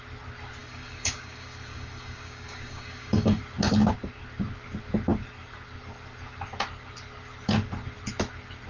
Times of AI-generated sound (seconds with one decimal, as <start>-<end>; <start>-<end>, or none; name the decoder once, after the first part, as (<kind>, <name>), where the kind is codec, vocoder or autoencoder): 0.6-3.4 (codec, DAC)